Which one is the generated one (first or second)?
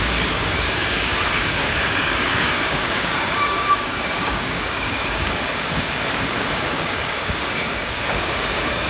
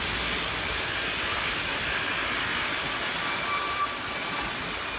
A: first